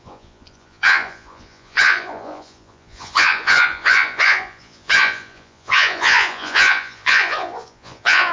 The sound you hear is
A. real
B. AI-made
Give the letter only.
B